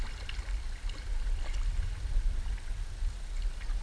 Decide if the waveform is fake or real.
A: real